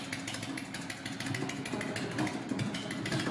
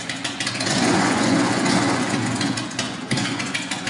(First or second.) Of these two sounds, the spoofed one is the second